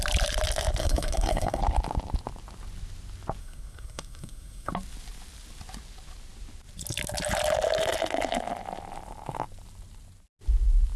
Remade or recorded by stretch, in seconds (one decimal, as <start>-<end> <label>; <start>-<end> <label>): 0.0-0.8 recorded; 0.8-1.6 remade; 1.6-3.4 recorded; 3.4-4.7 remade; 4.7-11.0 recorded